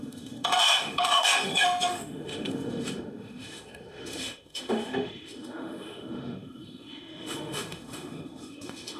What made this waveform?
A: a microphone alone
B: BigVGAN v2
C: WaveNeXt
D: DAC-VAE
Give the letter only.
D